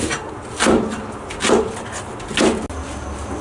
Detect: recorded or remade recorded